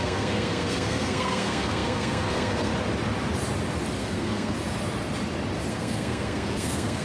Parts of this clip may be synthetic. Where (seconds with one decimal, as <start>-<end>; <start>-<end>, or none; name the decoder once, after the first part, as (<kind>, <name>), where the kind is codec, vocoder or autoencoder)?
0.0-2.7 (codec, SNAC); 4.0-4.6; 5.7-7.0